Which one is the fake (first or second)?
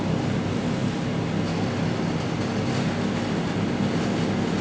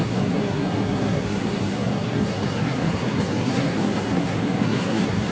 second